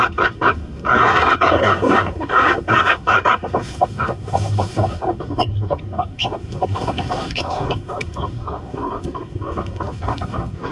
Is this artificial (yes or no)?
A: yes